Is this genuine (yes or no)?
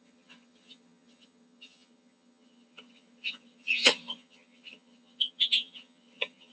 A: no